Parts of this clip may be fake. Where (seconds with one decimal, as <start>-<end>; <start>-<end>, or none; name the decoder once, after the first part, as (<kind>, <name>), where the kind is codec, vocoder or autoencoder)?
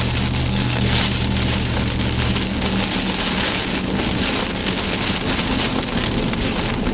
0.4-1.0 (codec, SNAC)